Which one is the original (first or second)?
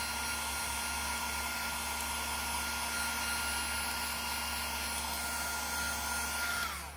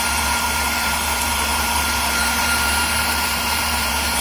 first